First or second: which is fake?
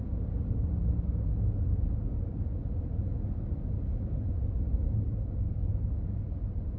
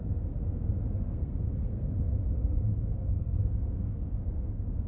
second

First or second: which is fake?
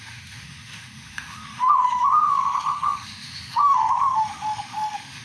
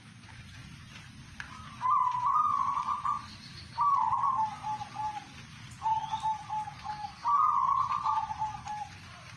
first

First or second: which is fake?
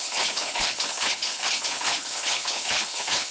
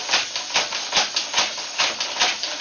first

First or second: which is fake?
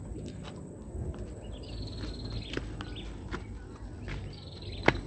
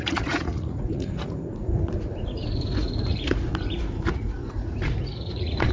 second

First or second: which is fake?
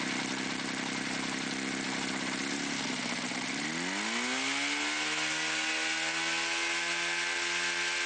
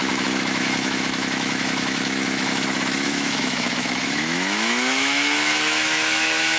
second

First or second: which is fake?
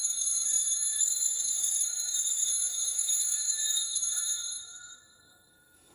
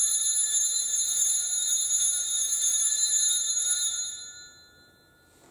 first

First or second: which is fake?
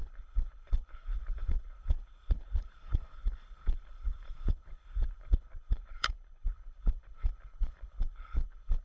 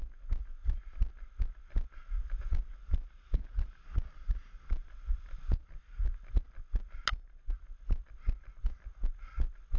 first